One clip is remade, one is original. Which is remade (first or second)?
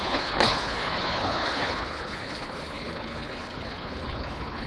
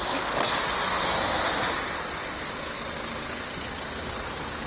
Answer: first